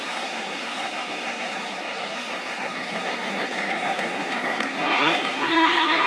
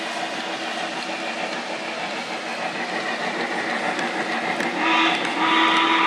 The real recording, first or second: second